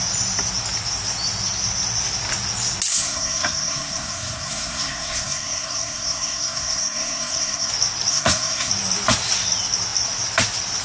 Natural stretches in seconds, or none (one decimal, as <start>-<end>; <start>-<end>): 0.0-2.9; 7.7-8.1; 8.7-10.8